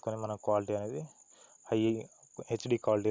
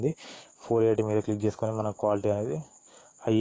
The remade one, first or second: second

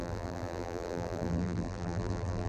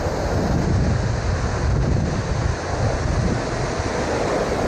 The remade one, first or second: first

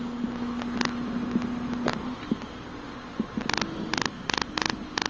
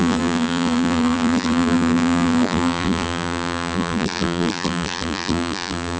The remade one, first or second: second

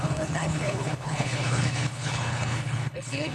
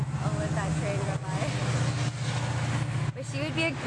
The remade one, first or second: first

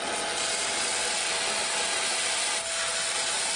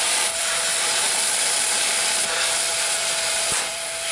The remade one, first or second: second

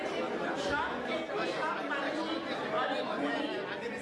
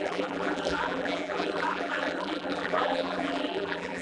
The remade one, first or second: second